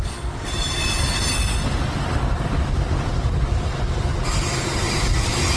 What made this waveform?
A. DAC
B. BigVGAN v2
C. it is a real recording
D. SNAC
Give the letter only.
C